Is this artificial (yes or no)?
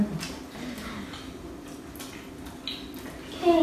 no